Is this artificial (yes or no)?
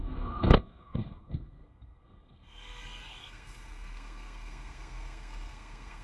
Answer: yes